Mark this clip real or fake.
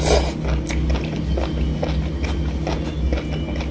real